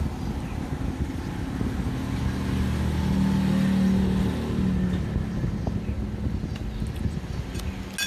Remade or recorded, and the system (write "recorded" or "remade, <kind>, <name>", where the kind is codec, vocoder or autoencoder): recorded